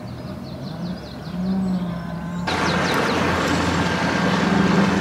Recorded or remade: recorded